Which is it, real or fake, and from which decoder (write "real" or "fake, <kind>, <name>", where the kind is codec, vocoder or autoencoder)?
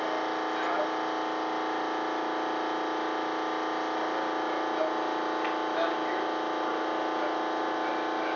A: real